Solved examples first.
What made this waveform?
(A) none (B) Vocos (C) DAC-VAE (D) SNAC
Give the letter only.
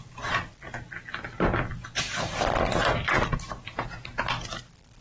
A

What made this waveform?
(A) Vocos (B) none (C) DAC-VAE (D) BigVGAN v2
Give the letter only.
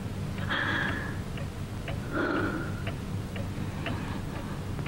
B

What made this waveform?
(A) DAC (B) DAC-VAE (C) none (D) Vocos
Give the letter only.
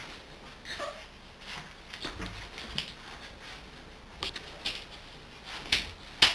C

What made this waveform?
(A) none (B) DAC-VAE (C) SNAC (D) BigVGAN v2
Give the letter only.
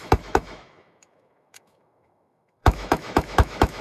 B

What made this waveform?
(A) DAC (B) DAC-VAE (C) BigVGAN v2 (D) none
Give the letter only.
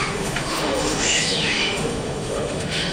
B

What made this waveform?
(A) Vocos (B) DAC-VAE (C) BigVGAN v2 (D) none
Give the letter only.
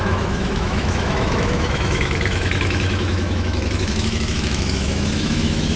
B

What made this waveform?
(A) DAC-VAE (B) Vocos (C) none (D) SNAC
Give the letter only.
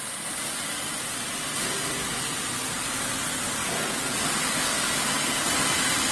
C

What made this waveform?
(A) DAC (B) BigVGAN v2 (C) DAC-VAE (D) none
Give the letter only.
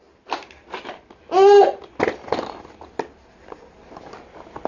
D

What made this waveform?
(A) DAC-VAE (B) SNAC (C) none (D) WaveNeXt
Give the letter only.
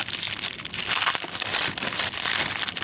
C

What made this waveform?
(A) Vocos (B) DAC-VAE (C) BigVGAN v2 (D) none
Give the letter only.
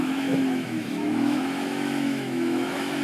B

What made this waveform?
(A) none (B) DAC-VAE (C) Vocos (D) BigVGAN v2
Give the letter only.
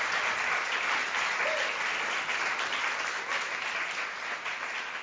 A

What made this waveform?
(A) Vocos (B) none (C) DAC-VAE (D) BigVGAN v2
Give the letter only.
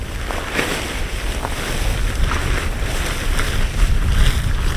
B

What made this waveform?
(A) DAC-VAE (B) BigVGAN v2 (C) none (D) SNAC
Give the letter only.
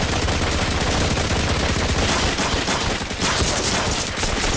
C